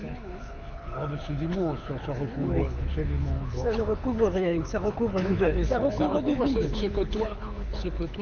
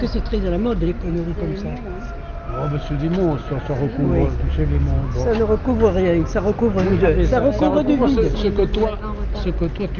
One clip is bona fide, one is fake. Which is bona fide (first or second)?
second